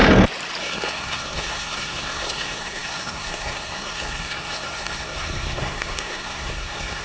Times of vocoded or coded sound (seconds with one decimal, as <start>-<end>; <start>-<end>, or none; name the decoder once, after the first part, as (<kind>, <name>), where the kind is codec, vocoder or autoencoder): 0.6-7.0 (codec, SNAC)